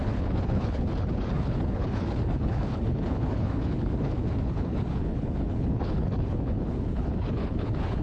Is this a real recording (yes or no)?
no